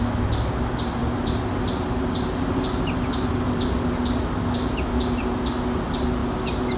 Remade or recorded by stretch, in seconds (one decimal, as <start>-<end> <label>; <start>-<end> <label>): 0.0-6.8 recorded